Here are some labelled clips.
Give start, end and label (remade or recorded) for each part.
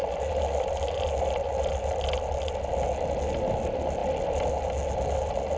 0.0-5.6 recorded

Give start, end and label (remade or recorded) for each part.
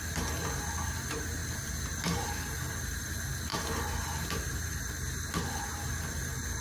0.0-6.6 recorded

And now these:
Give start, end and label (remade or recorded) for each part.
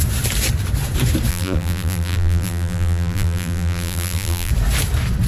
0.0-1.3 recorded; 1.3-4.5 remade; 4.5-5.3 recorded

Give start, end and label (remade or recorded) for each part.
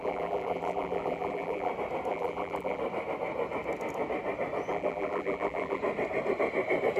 0.0-1.7 remade; 1.7-2.1 recorded; 2.1-2.8 remade; 2.8-4.7 recorded; 4.7-5.8 remade; 5.8-7.0 recorded